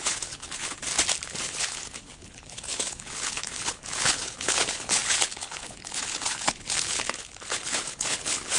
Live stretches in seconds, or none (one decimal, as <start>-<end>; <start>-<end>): 0.8-1.4